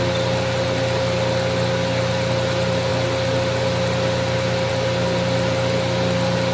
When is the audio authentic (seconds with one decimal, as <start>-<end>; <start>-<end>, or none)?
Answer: 0.0-6.5